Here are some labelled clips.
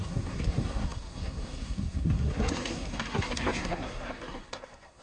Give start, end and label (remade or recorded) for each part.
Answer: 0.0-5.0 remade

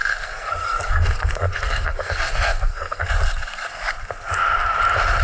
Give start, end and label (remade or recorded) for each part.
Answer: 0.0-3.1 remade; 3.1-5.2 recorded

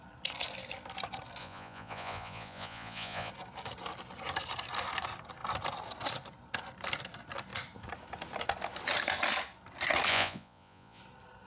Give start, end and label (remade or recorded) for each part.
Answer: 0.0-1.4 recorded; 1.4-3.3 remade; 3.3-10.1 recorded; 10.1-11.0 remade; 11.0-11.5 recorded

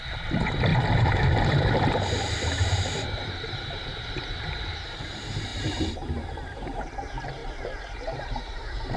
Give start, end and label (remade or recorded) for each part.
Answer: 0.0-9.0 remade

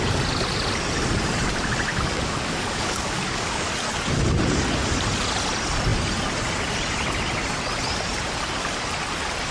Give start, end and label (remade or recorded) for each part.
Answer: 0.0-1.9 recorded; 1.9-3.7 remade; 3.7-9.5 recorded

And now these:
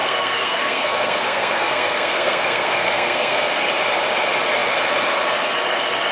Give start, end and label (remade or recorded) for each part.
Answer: 0.0-3.7 remade; 3.7-6.1 recorded